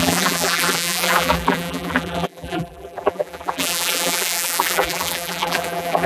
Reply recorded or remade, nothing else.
remade